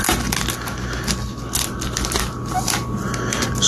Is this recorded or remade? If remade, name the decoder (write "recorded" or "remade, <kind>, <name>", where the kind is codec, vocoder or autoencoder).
recorded